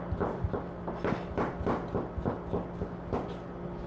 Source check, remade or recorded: recorded